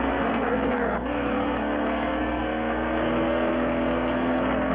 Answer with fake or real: fake